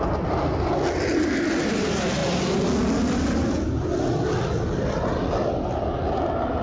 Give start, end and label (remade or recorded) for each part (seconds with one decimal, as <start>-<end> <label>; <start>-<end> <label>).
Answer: 0.0-6.6 recorded